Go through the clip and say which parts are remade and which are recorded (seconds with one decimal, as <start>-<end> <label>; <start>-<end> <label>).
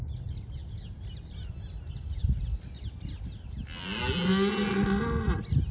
0.0-5.7 recorded